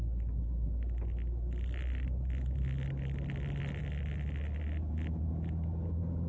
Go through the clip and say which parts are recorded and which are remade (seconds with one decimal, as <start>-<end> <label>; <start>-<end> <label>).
0.0-6.3 recorded